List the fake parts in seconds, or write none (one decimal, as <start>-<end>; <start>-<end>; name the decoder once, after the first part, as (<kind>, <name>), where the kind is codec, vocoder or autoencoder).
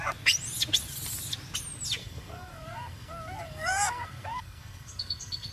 2.0-5.5 (codec, SNAC)